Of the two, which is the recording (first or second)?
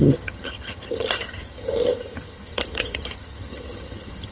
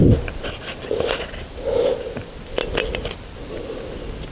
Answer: second